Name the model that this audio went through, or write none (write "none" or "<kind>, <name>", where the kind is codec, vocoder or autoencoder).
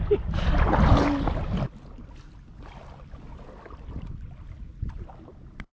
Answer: none